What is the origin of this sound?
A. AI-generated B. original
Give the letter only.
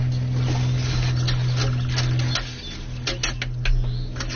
B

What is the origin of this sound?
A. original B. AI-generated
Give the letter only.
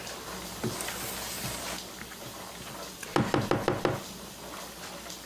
A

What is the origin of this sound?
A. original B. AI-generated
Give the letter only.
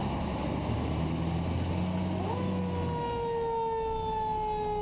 A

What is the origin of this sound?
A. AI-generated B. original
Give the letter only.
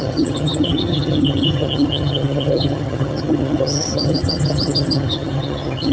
A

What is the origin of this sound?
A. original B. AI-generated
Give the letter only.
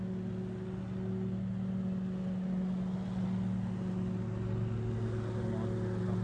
A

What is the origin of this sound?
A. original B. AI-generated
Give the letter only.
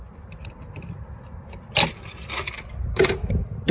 A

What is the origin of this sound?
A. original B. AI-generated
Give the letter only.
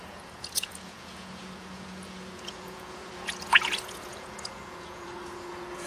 B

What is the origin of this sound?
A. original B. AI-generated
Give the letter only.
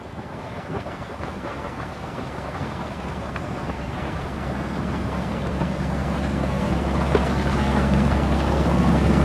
B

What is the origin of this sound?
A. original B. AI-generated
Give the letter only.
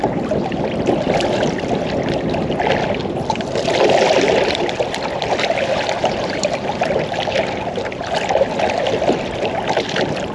A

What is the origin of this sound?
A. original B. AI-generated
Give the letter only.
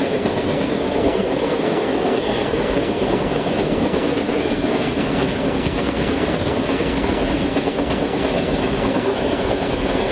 B